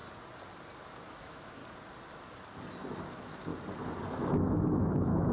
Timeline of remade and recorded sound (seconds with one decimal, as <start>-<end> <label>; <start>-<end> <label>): 0.0-1.1 recorded; 1.1-1.6 remade; 1.6-3.1 recorded; 3.1-3.5 remade; 3.5-4.1 recorded; 4.1-5.3 remade